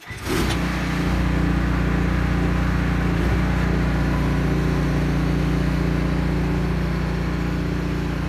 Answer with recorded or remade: recorded